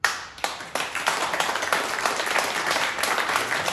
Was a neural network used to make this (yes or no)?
yes